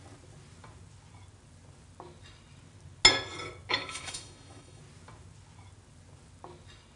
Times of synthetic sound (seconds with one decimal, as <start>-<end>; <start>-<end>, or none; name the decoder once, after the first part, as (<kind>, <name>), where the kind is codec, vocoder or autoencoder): 3.7-4.8 (autoencoder, DAC-VAE)

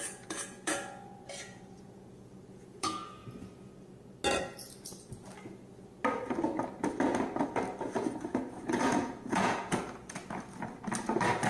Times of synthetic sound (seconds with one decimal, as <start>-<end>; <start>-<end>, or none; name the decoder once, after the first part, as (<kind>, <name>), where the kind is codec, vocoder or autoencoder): 0.0-3.2 (vocoder, Vocos); 8.1-10.2

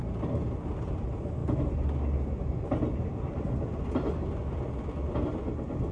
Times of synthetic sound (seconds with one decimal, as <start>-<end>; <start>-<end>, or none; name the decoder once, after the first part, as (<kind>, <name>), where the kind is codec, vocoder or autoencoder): none

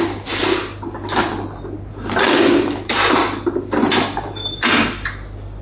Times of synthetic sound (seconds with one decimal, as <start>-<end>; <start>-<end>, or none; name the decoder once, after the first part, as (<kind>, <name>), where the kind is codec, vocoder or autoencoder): none

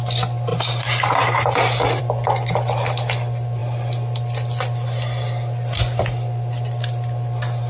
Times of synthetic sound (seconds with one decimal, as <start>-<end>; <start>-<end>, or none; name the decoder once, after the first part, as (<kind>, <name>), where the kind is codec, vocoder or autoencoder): 0.5-2.0 (vocoder, BigVGAN v2); 3.6-7.7